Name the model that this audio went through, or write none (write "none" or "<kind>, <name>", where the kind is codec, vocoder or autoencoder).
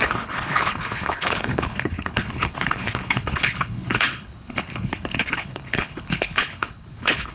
codec, HILCodec